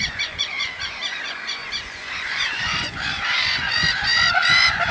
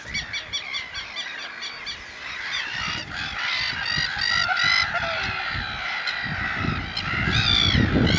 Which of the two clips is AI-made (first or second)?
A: first